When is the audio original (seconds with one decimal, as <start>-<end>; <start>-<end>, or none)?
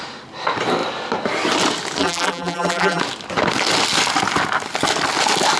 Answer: 0.0-2.0; 3.0-5.6